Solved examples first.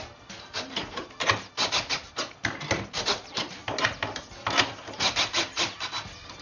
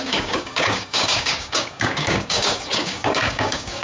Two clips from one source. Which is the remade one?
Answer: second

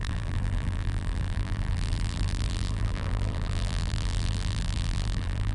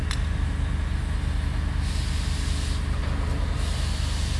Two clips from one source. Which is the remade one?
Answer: first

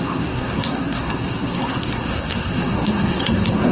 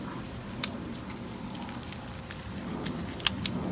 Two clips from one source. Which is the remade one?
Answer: first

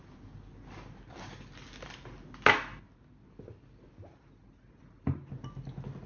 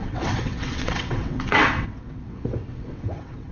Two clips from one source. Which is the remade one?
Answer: second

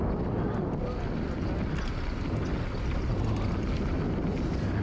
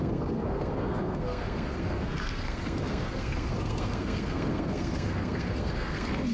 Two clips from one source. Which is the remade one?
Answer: second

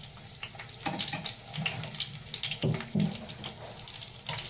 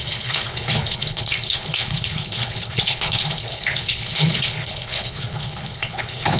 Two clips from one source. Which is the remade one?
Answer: second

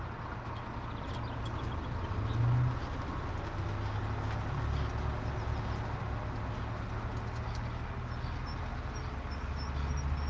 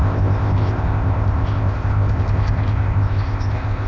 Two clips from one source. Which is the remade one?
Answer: second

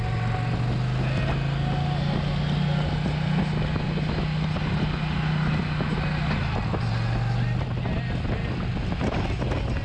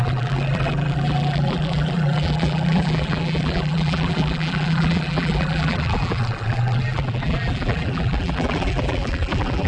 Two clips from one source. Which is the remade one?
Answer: second